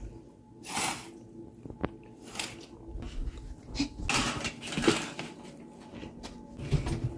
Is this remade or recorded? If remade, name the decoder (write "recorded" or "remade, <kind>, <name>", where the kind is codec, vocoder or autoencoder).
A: recorded